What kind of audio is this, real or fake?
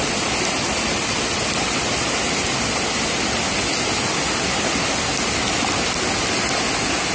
real